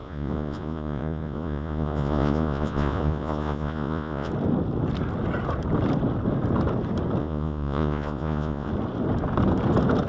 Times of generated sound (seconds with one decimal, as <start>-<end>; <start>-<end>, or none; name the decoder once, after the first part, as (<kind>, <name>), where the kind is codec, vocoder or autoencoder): 0.0-4.3 (vocoder, Vocos); 7.2-8.7